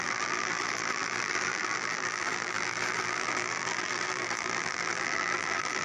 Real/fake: fake